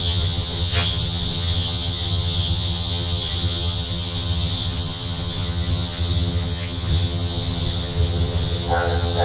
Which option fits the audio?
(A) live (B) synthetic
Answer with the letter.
B